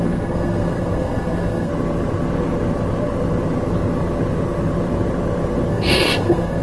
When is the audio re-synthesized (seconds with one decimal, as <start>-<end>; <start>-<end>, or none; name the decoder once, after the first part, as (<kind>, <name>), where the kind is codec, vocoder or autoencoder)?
0.0-1.7 (codec, SNAC); 5.7-6.6